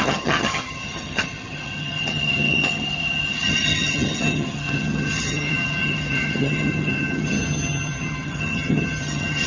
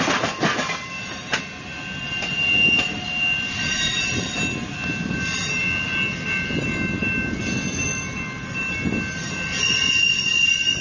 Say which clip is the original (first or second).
second